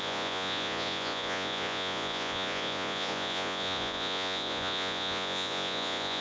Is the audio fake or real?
fake